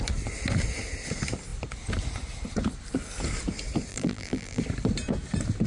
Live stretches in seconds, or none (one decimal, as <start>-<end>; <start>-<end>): 0.0-3.9; 4.6-5.7